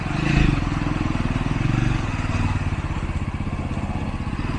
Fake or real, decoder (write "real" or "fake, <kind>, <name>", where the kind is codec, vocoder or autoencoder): real